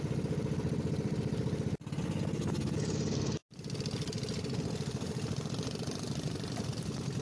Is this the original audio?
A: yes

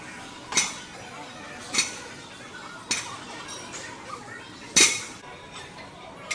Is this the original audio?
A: yes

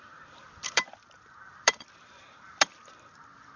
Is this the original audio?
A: no